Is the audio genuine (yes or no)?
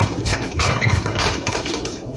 no